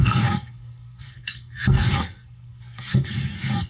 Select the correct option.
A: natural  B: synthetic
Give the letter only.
B